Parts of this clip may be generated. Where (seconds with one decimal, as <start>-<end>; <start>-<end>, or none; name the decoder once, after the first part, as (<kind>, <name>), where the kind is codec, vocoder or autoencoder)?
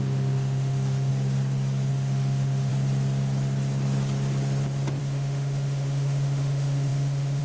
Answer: 0.0-1.1 (autoencoder, DAC-VAE); 1.9-2.7; 5.0-7.4